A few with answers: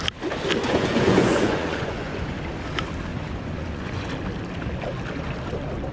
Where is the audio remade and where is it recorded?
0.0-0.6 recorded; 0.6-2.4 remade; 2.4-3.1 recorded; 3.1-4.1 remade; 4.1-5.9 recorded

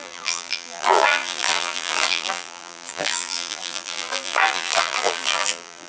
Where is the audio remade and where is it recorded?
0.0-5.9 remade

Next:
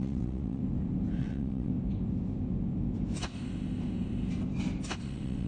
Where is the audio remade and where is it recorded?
0.0-0.6 remade; 0.6-1.2 recorded; 1.2-1.7 remade; 1.7-5.0 recorded; 5.0-5.5 remade

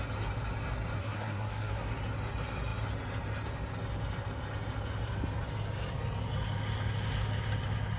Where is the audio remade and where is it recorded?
0.0-1.0 recorded; 1.0-1.9 remade; 1.9-8.0 recorded

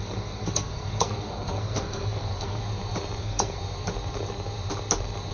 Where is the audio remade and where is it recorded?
0.0-2.6 remade; 2.6-3.2 recorded; 3.2-3.6 remade; 3.6-5.3 recorded